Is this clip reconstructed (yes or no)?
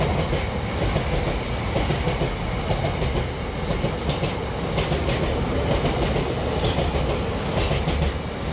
no